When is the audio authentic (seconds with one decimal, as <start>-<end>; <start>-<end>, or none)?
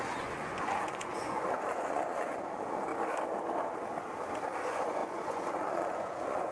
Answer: 2.9-4.5